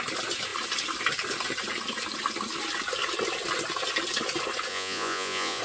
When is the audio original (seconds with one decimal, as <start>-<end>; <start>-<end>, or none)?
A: 0.0-4.7